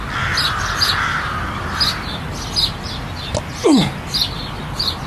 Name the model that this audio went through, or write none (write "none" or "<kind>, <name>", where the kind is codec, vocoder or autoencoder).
none